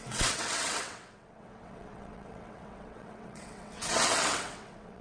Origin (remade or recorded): remade